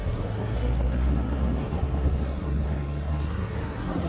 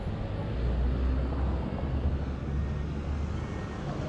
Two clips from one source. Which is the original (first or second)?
second